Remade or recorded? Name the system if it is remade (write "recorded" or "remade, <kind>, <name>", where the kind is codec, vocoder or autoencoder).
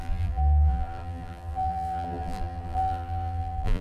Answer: remade, vocoder, BigVGAN v2